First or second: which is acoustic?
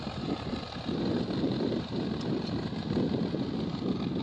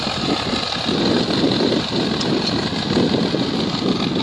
second